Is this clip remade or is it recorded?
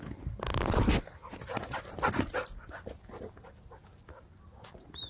recorded